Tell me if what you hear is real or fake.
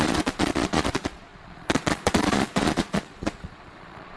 fake